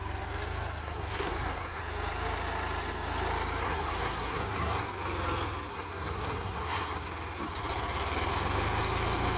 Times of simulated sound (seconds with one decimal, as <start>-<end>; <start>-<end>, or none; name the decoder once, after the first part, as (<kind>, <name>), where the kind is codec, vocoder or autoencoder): 0.8-1.8 (codec, SNAC); 3.6-4.8; 5.7-7.1